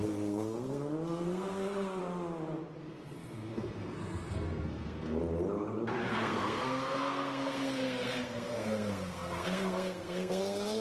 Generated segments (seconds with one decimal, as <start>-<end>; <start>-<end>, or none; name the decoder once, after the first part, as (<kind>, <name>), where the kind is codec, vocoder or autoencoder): 0.0-2.0 (codec, SNAC); 2.9-5.2; 6.1-10.8